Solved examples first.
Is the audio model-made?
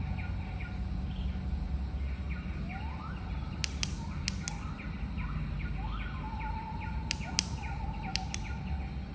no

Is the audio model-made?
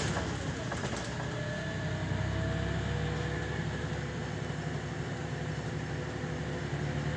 no